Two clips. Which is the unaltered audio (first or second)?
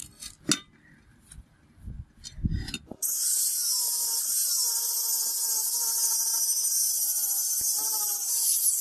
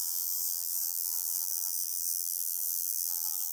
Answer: first